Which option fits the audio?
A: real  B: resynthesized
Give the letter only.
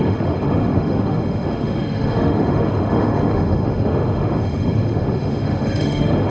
B